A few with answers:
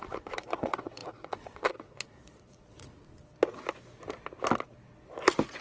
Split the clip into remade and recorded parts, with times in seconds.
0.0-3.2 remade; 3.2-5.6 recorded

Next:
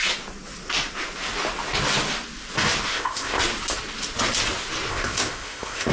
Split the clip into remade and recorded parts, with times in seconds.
0.0-2.9 recorded; 2.9-3.4 remade; 3.4-4.9 recorded; 4.9-5.9 remade